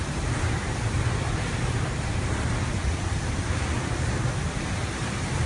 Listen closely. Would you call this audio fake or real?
fake